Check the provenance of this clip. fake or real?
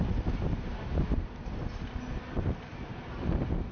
real